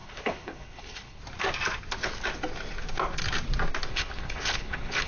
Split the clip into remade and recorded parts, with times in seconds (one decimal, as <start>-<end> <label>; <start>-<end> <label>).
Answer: 0.0-1.2 remade; 1.2-3.9 recorded; 3.9-5.1 remade